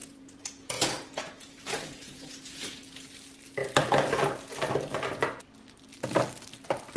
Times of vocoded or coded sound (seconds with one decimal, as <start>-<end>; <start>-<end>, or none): 0.0-3.1